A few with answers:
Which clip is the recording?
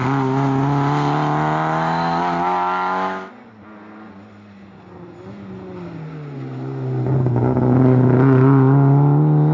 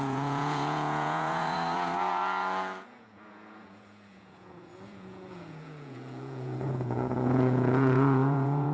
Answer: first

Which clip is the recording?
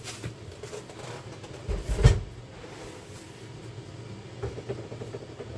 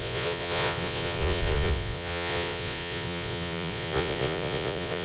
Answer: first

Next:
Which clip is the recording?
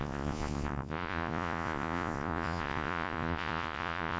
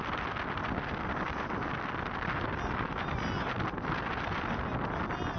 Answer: second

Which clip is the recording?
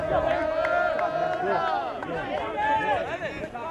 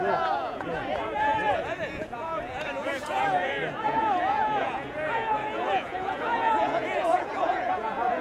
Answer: first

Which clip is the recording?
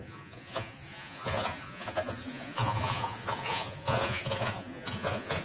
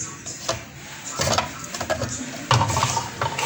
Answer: second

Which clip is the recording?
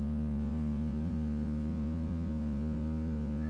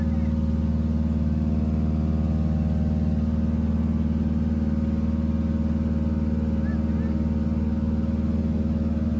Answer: second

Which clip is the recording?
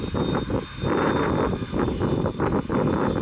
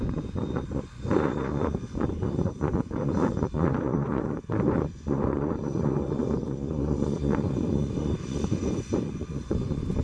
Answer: first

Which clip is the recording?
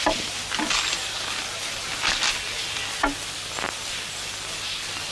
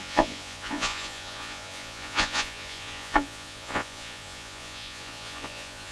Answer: first